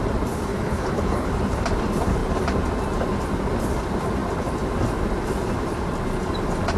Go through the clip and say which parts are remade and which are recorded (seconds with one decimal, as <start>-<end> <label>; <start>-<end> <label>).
0.0-0.5 recorded; 0.5-1.3 remade; 1.3-6.8 recorded

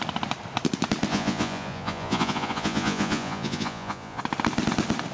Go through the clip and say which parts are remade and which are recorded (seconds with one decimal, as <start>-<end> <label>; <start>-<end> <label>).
0.0-1.1 recorded; 1.1-4.2 remade; 4.2-5.1 recorded

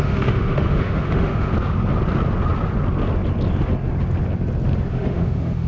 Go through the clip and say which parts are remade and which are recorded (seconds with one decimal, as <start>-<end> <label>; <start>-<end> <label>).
0.0-1.5 remade; 1.5-4.9 recorded; 4.9-5.7 remade

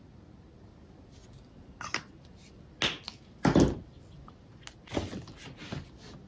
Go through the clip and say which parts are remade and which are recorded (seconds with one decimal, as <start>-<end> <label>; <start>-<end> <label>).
0.0-6.3 recorded

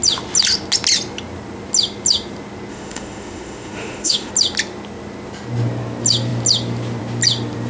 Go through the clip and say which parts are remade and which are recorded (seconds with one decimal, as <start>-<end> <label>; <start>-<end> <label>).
0.0-2.7 recorded; 2.7-4.3 remade; 4.3-7.7 recorded

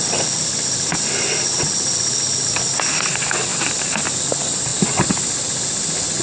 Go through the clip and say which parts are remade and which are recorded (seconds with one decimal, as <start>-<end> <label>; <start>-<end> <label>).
0.0-4.7 remade; 4.7-6.2 recorded

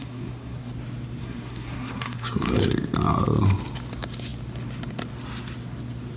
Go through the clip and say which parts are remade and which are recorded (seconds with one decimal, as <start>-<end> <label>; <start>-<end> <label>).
0.0-0.7 remade; 0.7-1.2 recorded; 1.2-2.7 remade; 2.7-6.2 recorded

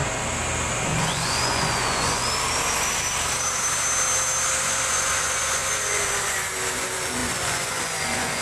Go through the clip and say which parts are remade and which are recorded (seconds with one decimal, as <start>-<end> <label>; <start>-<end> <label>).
0.0-0.8 recorded; 0.8-2.2 remade; 2.2-4.6 recorded; 4.6-8.4 remade